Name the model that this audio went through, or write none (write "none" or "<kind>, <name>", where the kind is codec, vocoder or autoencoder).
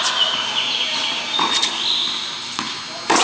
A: none